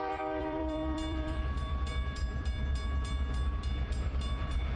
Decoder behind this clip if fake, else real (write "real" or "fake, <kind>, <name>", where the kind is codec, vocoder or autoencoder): fake, vocoder, BigVGAN v2